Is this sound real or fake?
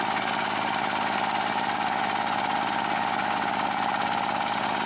real